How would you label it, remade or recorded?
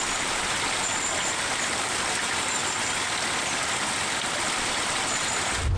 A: recorded